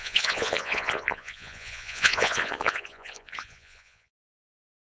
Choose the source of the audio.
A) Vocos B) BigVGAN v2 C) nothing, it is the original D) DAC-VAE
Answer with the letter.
A